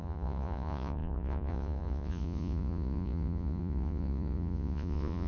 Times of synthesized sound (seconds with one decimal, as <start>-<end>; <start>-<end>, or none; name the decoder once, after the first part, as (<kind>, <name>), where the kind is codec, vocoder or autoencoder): 0.0-5.3 (vocoder, Vocos)